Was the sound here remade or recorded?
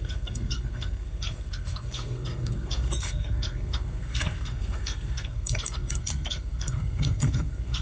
remade